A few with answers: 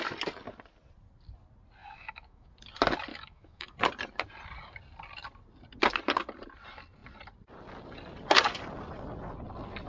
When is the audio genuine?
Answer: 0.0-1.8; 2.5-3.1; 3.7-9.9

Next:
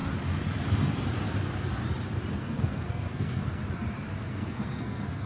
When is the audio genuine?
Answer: 0.0-2.3; 3.6-4.2

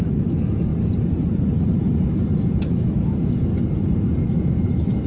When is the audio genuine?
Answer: 0.7-2.6; 3.5-4.2

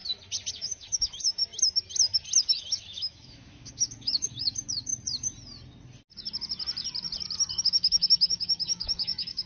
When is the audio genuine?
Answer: 0.0-0.5; 1.4-2.4; 4.9-7.6

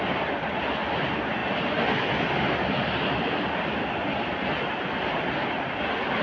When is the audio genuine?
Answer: 0.0-6.2